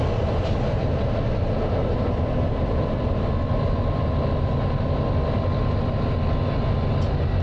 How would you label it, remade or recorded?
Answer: recorded